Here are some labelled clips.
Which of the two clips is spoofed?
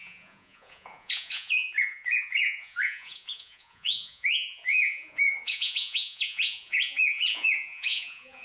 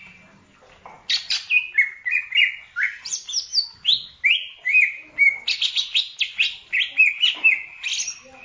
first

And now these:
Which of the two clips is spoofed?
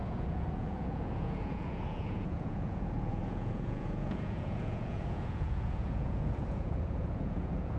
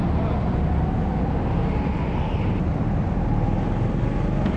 first